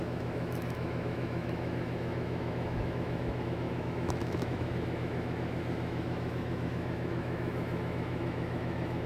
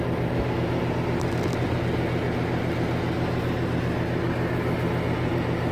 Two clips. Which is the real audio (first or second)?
second